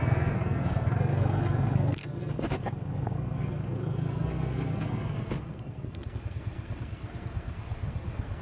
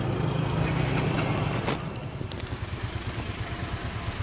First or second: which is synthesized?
first